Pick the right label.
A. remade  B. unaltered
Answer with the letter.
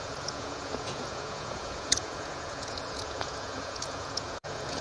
A